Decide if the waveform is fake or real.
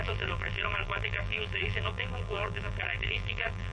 fake